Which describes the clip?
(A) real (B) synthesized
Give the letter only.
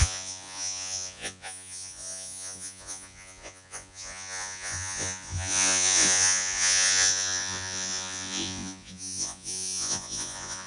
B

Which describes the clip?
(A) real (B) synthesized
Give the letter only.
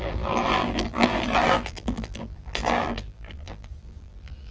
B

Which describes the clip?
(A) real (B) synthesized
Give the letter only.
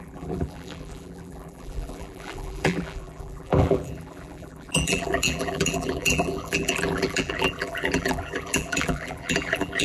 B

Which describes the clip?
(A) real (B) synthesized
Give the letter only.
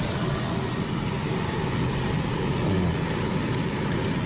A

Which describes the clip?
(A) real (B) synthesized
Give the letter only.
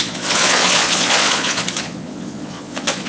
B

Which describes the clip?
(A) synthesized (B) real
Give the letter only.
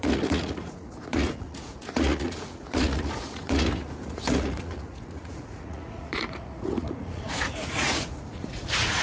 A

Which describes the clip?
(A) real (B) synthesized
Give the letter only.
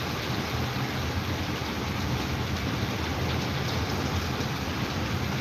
A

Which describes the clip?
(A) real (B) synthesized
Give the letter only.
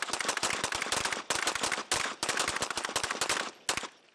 A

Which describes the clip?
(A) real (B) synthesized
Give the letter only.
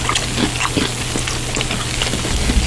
A